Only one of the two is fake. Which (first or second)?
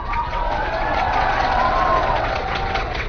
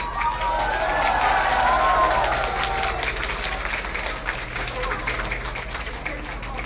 first